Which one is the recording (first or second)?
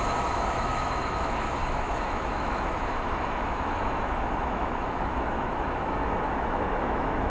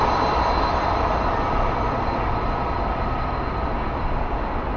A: second